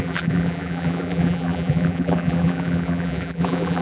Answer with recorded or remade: remade